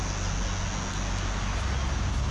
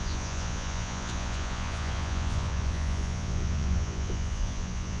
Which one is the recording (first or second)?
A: first